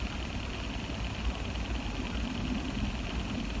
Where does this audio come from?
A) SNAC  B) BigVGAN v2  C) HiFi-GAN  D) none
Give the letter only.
D